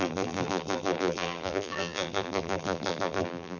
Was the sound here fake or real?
fake